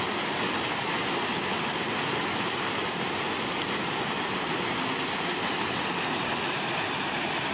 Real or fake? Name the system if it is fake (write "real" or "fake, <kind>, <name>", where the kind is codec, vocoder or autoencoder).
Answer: real